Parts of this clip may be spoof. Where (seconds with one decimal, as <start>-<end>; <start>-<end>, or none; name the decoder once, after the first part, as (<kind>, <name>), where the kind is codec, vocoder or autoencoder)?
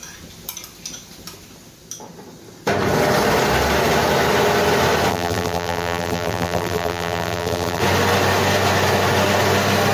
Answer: 5.1-7.8 (vocoder, BigVGAN v2)